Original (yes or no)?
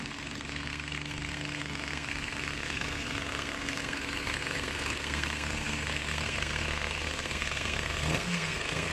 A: no